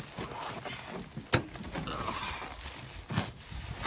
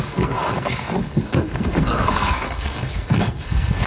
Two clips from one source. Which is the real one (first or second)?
first